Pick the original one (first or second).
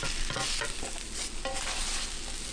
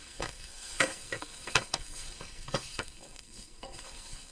first